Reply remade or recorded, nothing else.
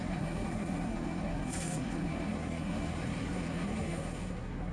remade